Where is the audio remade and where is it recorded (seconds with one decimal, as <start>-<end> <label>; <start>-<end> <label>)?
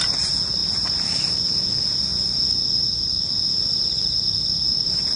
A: 0.0-5.2 recorded